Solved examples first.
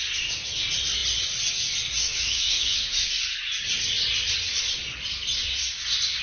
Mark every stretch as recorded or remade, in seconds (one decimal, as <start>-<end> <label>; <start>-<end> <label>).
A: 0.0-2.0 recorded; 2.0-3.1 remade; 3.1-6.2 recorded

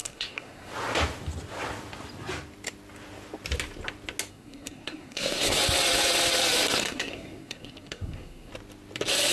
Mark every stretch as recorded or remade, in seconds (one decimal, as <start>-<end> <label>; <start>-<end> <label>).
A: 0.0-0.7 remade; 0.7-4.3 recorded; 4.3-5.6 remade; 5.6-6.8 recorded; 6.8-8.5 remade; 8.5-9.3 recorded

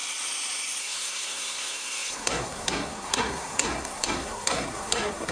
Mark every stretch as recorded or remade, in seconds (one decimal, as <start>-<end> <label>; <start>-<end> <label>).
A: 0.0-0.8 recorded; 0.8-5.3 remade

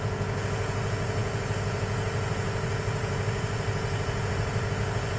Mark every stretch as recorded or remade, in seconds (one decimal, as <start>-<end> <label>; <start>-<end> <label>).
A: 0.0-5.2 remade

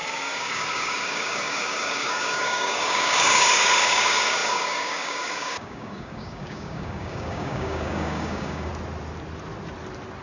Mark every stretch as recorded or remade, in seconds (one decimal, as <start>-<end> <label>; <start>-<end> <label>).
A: 0.0-8.7 remade; 8.7-10.2 recorded